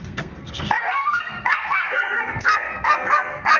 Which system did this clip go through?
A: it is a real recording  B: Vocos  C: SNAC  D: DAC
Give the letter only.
C